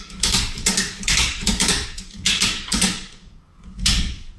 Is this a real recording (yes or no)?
no